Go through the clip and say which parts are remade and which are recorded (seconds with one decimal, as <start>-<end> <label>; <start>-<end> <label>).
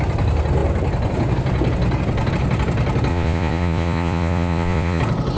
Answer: 0.0-3.1 recorded; 3.1-5.0 remade; 5.0-5.4 recorded